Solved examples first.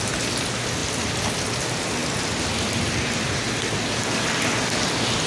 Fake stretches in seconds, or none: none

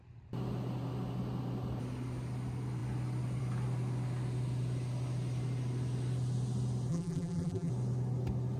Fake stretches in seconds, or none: 6.9-7.7

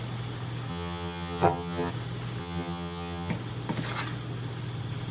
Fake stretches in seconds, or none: 0.7-1.9; 2.4-3.3

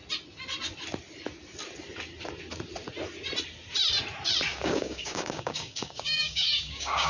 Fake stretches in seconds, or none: 4.5-7.1

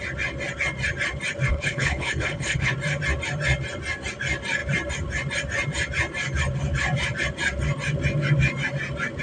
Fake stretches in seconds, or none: 1.5-2.7

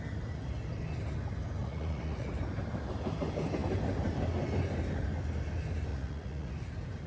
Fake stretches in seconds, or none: 1.6-2.3; 5.9-6.5

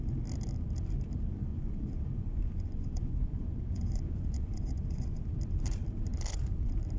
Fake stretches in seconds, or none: 1.5-5.2